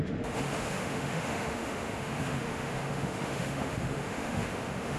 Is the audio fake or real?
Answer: fake